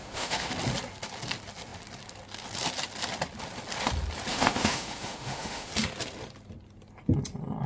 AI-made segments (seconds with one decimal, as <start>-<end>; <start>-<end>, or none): 0.0-0.5; 4.3-5.7